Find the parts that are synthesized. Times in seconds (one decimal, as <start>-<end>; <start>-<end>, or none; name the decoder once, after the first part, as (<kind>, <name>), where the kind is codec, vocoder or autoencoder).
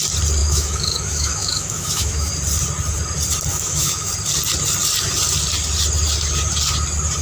0.4-2.3 (autoencoder, DAC-VAE); 3.5-4.1